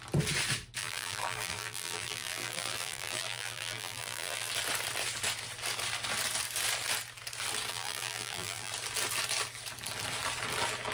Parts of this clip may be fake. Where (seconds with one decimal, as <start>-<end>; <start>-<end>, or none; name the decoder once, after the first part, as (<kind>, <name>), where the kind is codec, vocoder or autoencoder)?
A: 0.8-4.5 (vocoder, BigVGAN v2); 7.7-8.7